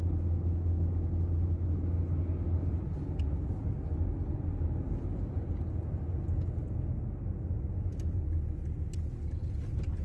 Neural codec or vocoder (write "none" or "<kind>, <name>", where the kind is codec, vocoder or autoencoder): none